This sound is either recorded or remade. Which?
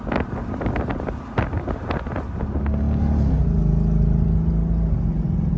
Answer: recorded